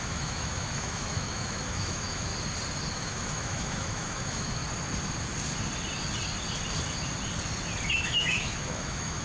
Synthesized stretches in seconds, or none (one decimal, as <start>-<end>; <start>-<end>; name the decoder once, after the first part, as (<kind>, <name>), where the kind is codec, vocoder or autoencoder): 0.0-2.3 (autoencoder, DAC-VAE); 2.9-4.6; 7.9-9.2